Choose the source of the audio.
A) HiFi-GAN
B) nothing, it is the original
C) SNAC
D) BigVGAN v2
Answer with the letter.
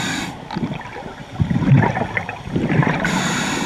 D